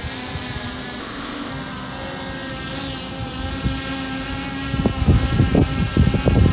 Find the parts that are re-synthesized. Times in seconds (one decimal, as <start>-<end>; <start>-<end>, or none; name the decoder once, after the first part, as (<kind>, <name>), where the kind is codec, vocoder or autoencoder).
1.0-1.5 (codec, ZipCodec)